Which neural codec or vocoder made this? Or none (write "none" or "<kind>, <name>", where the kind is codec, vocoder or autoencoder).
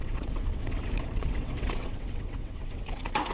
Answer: vocoder, WaveNeXt